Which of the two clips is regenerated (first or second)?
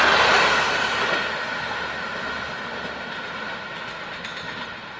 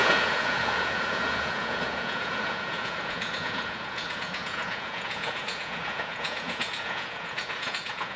second